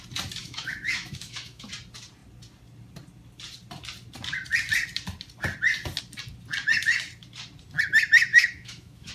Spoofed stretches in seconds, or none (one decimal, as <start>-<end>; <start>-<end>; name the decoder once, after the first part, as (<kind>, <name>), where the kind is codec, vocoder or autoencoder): 0.4-1.7 (autoencoder, DAC-VAE); 8.3-9.1